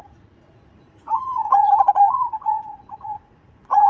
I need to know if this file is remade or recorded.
remade